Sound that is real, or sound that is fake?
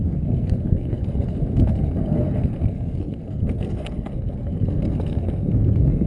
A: fake